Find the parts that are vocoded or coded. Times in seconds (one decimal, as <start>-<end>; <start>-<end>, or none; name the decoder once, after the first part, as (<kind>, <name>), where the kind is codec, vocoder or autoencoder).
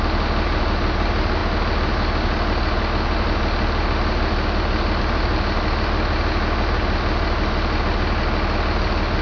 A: none